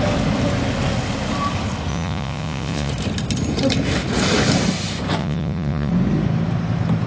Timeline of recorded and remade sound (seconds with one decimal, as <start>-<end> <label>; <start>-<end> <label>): 0.0-1.9 recorded; 1.9-2.9 remade; 2.9-5.2 recorded; 5.2-5.9 remade; 5.9-7.1 recorded